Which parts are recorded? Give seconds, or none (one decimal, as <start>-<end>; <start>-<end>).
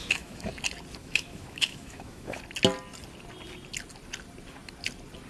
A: 0.5-1.0; 2.4-5.3